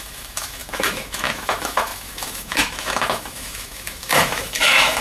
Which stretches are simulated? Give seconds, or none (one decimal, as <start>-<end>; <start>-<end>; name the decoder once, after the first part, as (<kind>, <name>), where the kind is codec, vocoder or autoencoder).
0.0-5.0 (autoencoder, DAC-VAE)